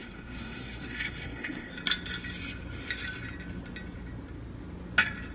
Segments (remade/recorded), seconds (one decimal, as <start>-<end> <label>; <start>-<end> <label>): 0.0-1.7 remade; 1.7-5.3 recorded